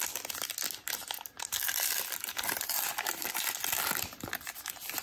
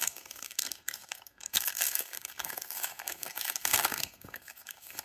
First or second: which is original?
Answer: first